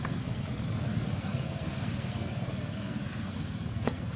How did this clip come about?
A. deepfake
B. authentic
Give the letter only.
A